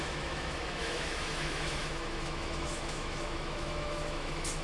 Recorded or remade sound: remade